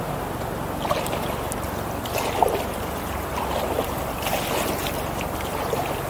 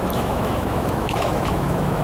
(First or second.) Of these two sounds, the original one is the first